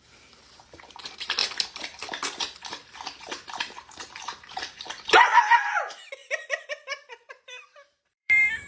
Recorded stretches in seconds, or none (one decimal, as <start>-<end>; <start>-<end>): 1.4-3.2